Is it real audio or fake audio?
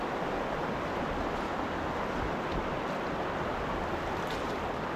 real